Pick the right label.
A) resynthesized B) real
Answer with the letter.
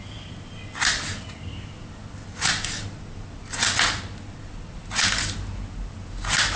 B